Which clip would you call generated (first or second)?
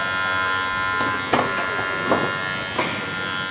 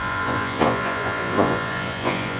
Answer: second